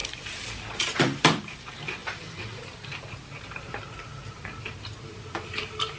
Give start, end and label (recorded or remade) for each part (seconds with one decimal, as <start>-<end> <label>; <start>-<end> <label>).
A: 0.0-1.6 remade; 1.6-2.0 recorded; 2.0-3.1 remade; 3.1-6.0 recorded